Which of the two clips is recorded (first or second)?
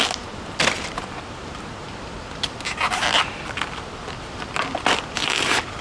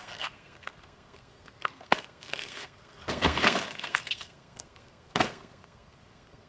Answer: first